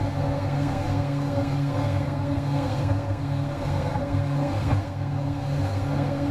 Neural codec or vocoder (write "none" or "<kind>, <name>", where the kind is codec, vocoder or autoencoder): codec, SNAC